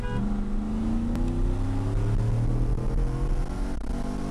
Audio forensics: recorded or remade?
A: recorded